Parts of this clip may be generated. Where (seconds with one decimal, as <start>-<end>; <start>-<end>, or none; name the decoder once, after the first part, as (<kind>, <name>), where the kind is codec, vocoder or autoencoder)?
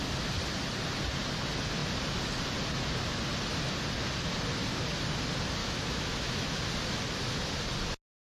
5.6-6.6 (autoencoder, DAC-VAE)